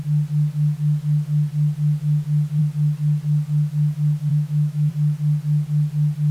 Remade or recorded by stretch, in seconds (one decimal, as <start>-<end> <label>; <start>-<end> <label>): 0.0-4.3 recorded; 4.3-4.9 remade; 4.9-6.3 recorded